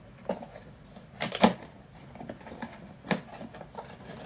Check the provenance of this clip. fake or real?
real